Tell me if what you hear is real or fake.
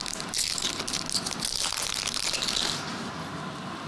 real